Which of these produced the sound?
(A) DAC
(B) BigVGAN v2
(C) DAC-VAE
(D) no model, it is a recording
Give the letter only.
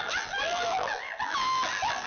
B